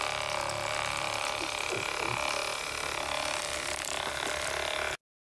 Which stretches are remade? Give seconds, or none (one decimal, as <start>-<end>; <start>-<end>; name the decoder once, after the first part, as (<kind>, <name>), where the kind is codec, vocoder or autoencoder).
none